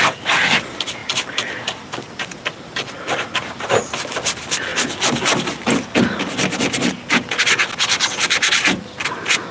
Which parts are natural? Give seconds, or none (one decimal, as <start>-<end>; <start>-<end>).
0.0-9.5